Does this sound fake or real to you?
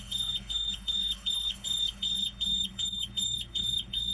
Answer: fake